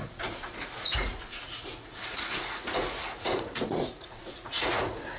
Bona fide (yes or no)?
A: no